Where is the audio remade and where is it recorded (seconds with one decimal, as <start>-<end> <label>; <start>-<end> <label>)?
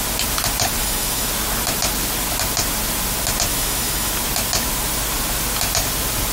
0.0-0.8 recorded; 0.8-1.3 remade; 1.3-3.5 recorded; 3.5-4.1 remade; 4.1-6.3 recorded